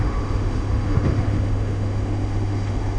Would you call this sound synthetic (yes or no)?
yes